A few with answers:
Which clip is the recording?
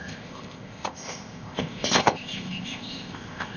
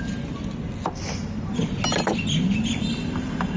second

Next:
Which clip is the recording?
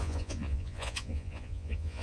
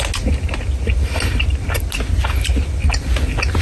second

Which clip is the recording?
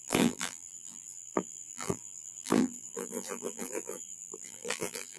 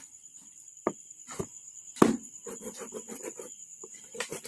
second